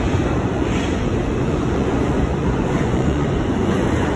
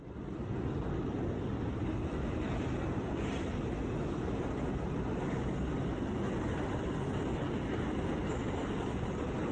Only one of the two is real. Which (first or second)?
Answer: second